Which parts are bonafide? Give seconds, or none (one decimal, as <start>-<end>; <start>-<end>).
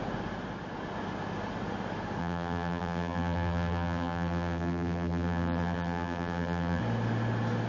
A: 0.0-2.2; 6.8-7.7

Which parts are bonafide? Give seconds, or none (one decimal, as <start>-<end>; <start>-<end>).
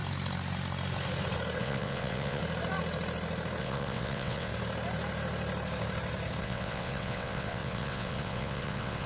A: 0.0-1.6; 2.4-3.6; 4.5-6.4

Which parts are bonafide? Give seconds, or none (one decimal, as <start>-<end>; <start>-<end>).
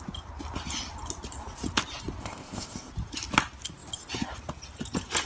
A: 0.0-2.2; 2.9-5.3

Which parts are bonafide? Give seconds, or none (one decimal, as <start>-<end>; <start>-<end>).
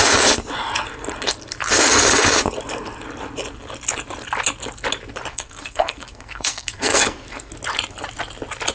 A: 0.0-5.3; 7.5-8.7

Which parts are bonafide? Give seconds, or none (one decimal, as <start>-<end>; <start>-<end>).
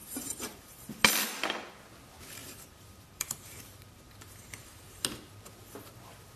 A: 0.8-2.4; 5.0-6.4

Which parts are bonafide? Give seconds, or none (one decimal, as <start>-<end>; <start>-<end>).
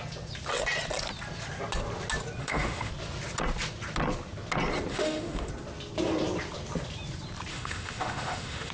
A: 0.0-2.4; 2.9-4.9; 5.5-7.5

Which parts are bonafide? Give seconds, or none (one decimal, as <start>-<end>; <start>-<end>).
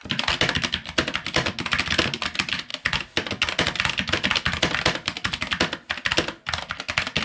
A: 0.0-7.2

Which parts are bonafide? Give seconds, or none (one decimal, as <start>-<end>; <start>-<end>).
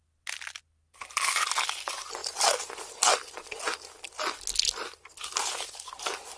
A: 0.0-6.4